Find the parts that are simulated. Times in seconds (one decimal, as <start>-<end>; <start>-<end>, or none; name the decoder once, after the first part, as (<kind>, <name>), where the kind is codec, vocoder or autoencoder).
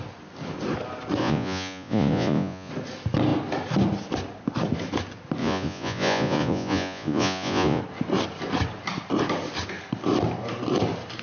1.2-2.7 (vocoder, Vocos); 5.4-7.8